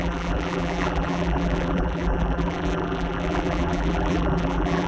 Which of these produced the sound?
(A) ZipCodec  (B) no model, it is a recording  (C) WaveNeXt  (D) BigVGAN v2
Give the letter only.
D